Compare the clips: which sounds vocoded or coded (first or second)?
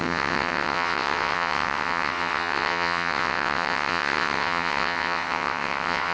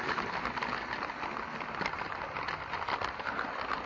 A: first